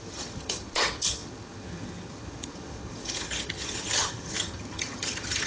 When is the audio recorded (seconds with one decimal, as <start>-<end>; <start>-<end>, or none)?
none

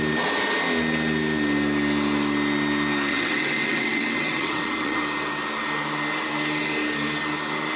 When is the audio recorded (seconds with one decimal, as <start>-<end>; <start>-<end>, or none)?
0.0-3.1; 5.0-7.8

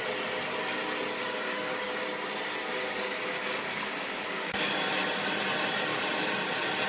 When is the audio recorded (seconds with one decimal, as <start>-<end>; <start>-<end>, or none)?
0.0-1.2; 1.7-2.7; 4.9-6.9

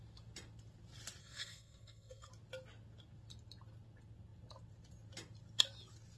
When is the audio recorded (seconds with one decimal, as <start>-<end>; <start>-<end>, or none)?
0.0-1.2; 2.3-6.2

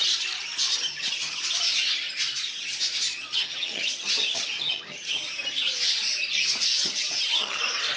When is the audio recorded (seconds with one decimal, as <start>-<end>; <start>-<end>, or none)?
0.0-0.7; 1.4-3.3; 5.1-6.8; 7.6-8.0

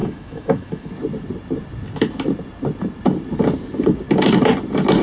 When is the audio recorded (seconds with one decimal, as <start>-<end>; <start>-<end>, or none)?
0.9-5.0

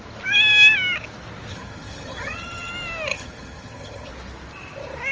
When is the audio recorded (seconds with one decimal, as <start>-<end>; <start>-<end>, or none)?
0.0-1.5; 2.7-3.1; 4.1-5.1